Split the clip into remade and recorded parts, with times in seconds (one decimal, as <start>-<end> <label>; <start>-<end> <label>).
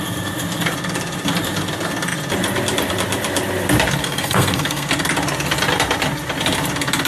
0.0-4.0 recorded; 4.0-4.9 remade; 4.9-7.1 recorded